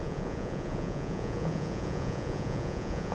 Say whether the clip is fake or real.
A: fake